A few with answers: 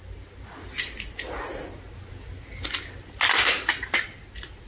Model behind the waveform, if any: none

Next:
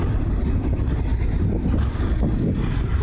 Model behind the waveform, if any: none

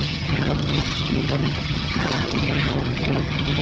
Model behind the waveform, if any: vocoder, HiFi-GAN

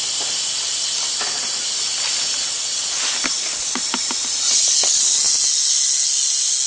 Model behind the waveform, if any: none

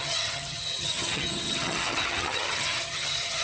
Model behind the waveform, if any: vocoder, HiFi-GAN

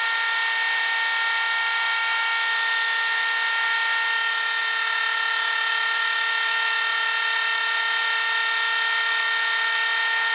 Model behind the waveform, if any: none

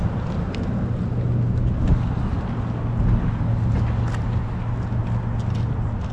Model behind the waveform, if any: none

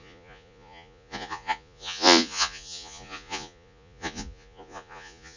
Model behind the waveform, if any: vocoder, Vocos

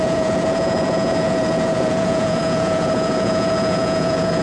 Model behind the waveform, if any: vocoder, Vocos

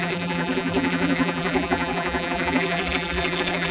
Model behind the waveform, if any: vocoder, BigVGAN v2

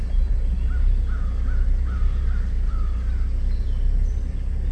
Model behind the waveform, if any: none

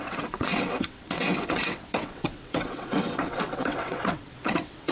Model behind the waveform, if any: vocoder, WaveNeXt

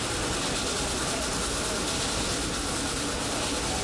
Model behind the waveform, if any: none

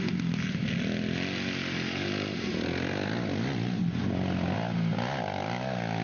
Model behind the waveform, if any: none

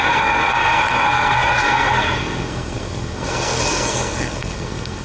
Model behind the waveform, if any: codec, SNAC